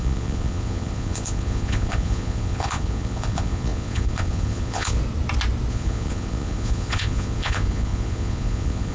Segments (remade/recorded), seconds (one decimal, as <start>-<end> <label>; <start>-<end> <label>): 0.0-5.0 remade; 5.0-5.7 recorded; 5.7-8.9 remade